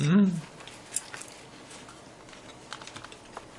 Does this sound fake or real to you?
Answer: real